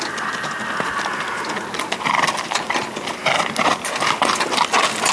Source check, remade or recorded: recorded